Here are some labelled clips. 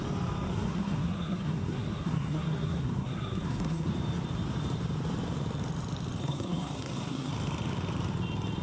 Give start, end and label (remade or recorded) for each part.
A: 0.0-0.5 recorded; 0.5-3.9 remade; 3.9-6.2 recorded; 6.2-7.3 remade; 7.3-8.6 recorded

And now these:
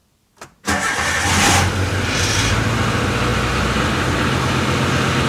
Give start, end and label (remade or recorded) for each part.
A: 0.0-5.3 recorded

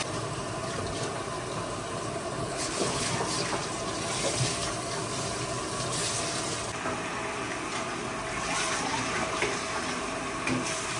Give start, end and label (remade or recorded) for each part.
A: 0.0-2.4 recorded; 2.4-3.1 remade; 3.1-11.0 recorded

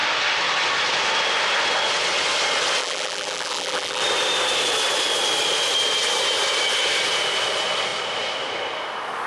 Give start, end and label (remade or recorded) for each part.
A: 0.0-2.8 recorded; 2.8-4.0 remade; 4.0-9.3 recorded